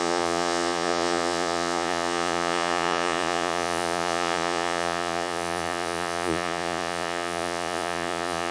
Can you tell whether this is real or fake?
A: fake